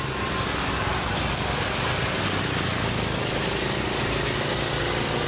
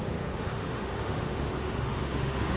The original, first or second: first